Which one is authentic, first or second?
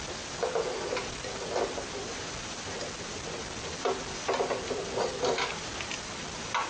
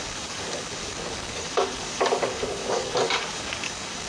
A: first